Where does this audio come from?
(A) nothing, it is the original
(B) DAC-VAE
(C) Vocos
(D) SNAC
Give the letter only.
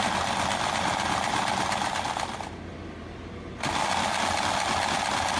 A